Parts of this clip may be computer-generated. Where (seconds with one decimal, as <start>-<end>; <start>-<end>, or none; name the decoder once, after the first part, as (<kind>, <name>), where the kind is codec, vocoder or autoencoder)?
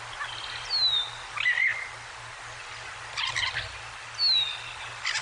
none